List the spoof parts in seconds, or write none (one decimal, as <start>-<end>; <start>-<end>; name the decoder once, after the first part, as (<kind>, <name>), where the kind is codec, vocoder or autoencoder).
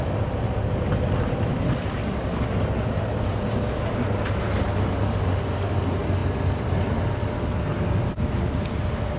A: none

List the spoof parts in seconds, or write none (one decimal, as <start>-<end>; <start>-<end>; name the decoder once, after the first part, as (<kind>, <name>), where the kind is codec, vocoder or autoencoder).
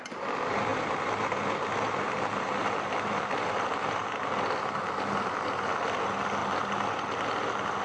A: none